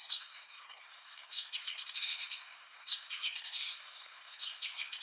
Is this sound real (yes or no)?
no